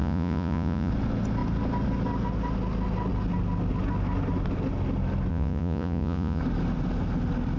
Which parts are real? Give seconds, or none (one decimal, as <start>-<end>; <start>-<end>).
0.9-5.3; 6.4-7.6